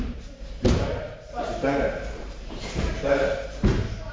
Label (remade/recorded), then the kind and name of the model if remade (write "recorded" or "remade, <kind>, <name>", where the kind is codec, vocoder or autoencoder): remade, vocoder, BigVGAN v2